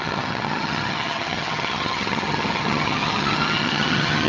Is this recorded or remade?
remade